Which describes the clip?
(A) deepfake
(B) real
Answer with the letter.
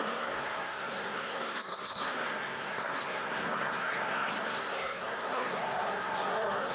A